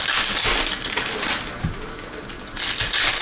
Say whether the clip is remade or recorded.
recorded